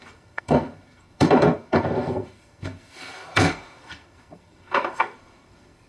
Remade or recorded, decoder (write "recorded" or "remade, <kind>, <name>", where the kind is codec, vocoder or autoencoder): remade, codec, SNAC